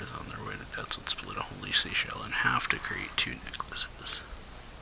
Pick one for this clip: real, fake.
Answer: real